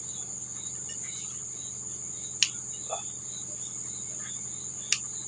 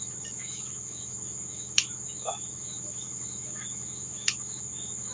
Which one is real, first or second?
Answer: first